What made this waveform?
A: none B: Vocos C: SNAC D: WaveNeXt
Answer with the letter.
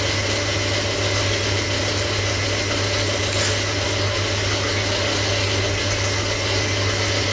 A